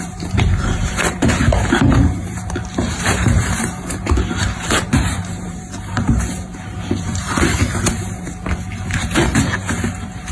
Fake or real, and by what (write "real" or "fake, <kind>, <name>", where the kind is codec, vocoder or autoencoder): fake, vocoder, BigVGAN v2